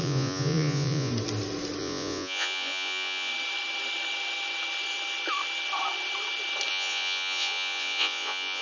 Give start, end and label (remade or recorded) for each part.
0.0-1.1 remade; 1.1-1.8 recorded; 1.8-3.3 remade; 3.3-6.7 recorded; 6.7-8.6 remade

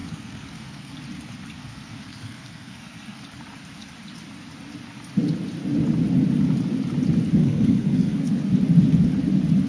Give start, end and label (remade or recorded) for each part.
0.0-0.9 remade; 0.9-1.6 recorded; 1.6-3.2 remade; 3.2-7.4 recorded; 7.4-8.5 remade; 8.5-9.7 recorded

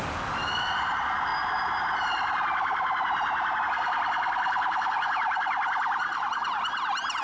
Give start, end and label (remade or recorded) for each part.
0.0-7.2 recorded

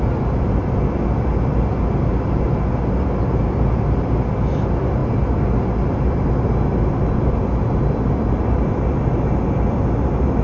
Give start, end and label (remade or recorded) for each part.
0.0-10.4 recorded

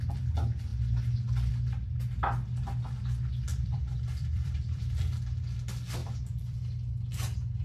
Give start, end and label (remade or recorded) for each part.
0.0-3.5 recorded; 3.5-5.0 remade; 5.0-6.0 recorded; 6.0-6.6 remade; 6.6-7.6 recorded

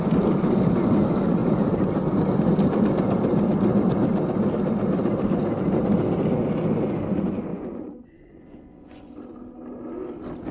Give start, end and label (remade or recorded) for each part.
0.0-7.5 recorded; 7.5-9.1 remade; 9.1-10.5 recorded

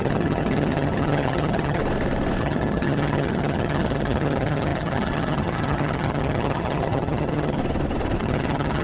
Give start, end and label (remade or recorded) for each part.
0.0-1.8 remade; 1.8-2.4 recorded; 2.4-7.6 remade; 7.6-8.2 recorded; 8.2-8.8 remade

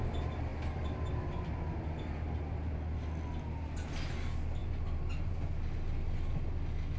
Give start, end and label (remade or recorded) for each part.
0.0-7.0 recorded